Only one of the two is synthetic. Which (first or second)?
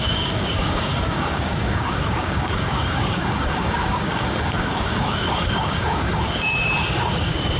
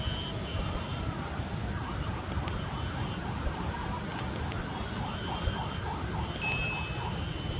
first